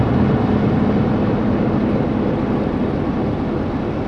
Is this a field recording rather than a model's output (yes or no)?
yes